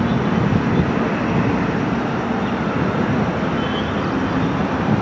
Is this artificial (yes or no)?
no